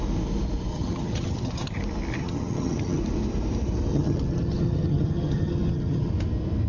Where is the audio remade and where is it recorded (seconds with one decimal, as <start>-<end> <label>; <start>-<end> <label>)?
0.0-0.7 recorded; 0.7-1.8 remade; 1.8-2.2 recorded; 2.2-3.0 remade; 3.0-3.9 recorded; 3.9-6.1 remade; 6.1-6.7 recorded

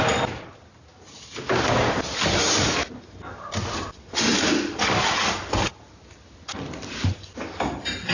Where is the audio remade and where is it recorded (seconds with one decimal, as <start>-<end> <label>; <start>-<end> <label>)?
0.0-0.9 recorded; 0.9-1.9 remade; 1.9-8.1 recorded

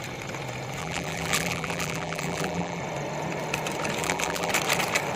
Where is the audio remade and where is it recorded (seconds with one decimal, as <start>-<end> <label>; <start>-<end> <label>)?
0.0-0.8 recorded; 0.8-2.8 remade; 2.8-4.0 recorded; 4.0-4.5 remade; 4.5-5.2 recorded